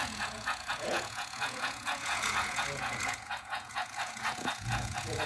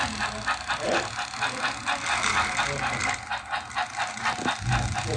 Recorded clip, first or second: second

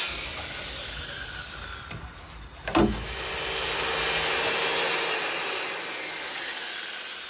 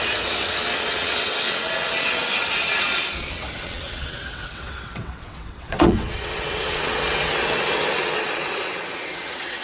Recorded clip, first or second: first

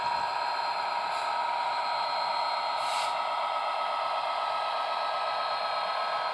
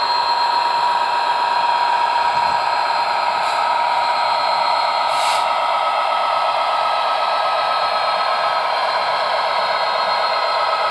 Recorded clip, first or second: first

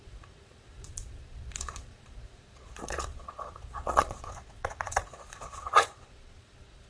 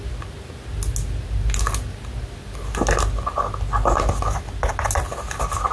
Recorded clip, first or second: second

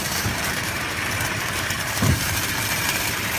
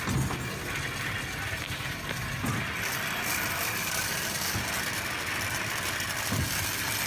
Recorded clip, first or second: second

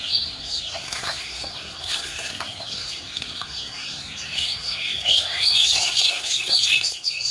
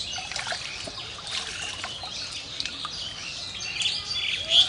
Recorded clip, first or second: second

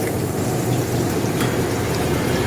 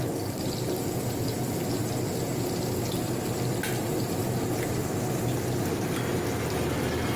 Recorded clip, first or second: second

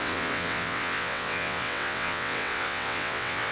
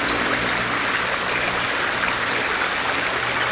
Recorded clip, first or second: second